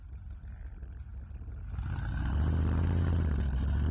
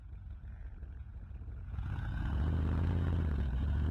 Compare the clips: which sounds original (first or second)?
first